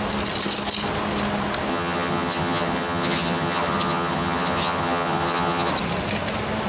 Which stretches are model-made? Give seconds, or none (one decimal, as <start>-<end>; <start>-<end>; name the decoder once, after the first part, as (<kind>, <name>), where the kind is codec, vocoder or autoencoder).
1.7-5.7 (vocoder, HiFi-GAN)